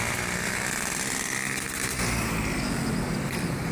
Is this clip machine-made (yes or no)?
no